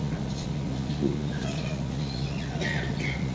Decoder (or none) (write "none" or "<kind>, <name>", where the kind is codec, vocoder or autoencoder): vocoder, Vocos